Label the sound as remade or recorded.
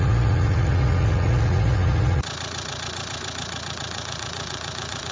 remade